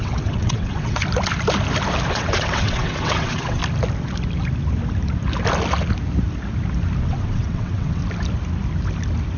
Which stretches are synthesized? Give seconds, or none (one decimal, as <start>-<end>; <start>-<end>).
0.0-1.0; 2.1-3.6; 7.0-8.0